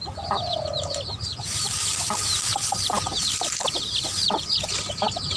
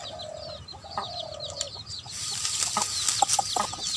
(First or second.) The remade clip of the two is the first